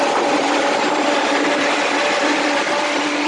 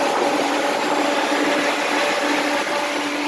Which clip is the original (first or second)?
second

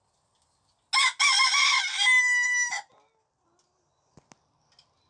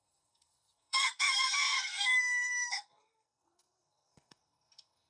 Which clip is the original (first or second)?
first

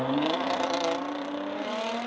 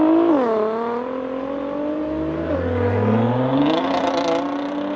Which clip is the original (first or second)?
second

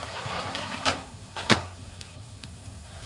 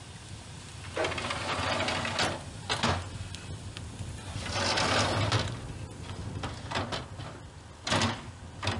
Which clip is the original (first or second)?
second